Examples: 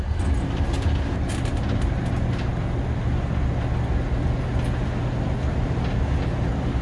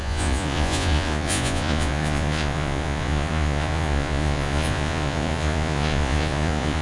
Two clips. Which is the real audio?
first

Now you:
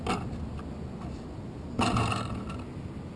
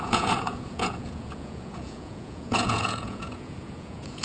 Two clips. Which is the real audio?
first